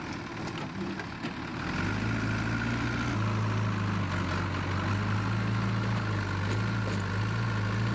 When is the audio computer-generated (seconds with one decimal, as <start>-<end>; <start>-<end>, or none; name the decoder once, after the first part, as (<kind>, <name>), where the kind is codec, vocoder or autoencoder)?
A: none